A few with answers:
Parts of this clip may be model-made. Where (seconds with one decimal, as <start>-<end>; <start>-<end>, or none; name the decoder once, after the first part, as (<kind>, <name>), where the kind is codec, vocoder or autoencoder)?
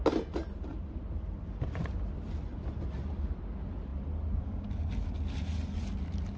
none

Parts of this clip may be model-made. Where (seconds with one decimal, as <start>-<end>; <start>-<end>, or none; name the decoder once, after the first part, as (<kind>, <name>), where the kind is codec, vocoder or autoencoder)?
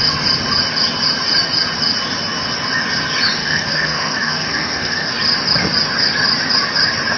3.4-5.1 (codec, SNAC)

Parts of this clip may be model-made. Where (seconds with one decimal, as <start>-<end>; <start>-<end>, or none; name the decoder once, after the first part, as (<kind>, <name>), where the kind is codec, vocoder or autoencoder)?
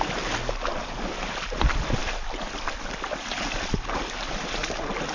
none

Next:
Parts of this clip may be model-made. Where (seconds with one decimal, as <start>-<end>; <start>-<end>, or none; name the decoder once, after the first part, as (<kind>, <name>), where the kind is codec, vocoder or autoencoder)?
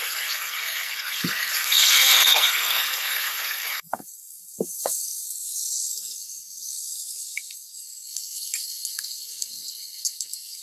0.0-10.6 (codec, SNAC)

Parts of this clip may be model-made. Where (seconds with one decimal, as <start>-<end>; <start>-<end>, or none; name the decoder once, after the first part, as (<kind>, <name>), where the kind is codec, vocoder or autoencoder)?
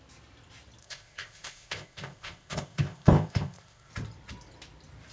0.8-3.9 (codec, ZipCodec)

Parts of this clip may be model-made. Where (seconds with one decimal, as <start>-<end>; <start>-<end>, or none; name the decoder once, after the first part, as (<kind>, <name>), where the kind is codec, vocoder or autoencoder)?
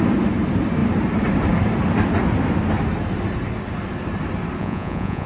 4.6-5.3 (vocoder, Vocos)